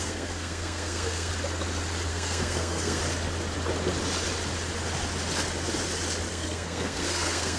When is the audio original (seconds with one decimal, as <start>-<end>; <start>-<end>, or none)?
1.3-2.1; 3.0-6.3